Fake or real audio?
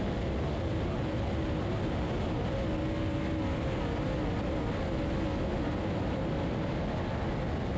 real